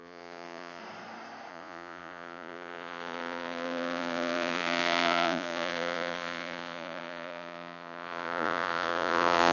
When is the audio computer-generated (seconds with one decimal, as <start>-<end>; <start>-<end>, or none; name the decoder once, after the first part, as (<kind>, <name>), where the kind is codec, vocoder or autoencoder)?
0.0-0.8 (vocoder, Vocos); 1.5-9.5